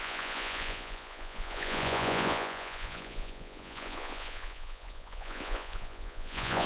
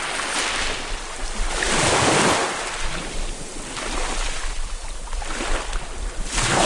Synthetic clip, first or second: first